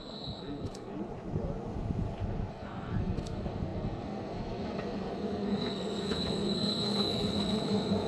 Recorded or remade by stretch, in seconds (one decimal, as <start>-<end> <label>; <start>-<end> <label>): 0.0-0.9 remade; 0.9-2.5 recorded; 2.5-8.1 remade